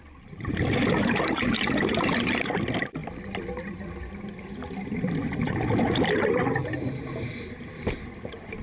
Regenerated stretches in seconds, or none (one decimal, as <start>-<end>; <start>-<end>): none